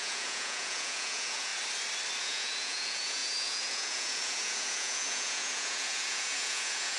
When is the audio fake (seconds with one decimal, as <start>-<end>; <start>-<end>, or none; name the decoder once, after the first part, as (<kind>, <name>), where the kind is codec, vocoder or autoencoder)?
0.0-1.5 (vocoder, Vocos); 2.2-7.0